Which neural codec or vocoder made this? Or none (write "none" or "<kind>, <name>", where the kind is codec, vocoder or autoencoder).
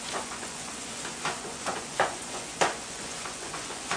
vocoder, Vocos